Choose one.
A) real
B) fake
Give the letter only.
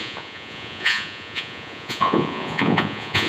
B